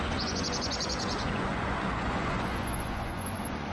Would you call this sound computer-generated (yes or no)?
yes